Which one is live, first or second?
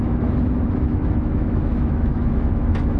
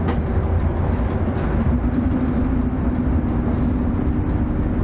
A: second